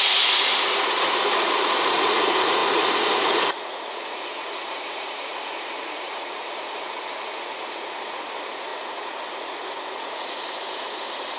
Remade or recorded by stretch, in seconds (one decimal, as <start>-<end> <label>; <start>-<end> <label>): 0.0-11.4 remade